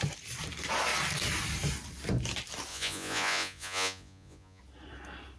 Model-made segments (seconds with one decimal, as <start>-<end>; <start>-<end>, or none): 2.7-4.6

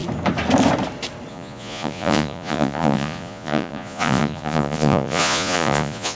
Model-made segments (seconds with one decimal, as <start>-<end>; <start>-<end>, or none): 1.3-6.1

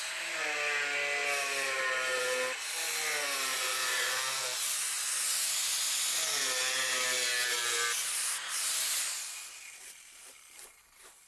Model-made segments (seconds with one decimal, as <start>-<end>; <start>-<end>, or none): 3.5-4.2

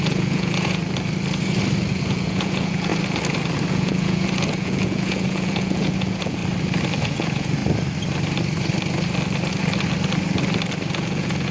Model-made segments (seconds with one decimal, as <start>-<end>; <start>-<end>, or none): 0.0-0.8; 1.9-2.9; 3.7-6.4; 7.0-7.6; 10.9-11.5

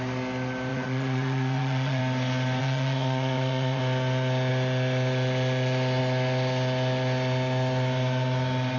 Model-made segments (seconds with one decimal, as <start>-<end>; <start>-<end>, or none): 0.7-2.0; 2.6-3.8

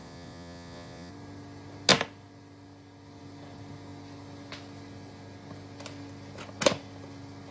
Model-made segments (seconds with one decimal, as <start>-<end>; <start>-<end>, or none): 0.0-1.1

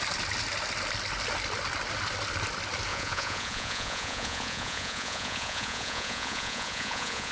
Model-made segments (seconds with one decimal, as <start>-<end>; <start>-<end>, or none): 2.9-7.3